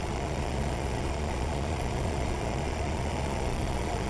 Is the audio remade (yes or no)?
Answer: yes